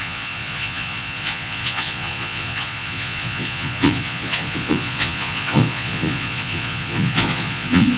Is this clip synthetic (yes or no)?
yes